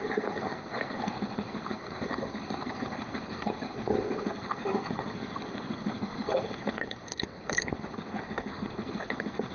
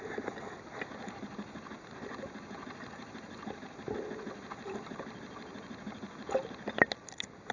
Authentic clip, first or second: second